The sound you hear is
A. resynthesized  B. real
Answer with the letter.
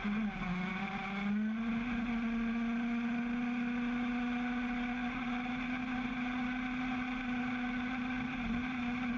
B